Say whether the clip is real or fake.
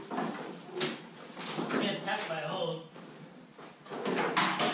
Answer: real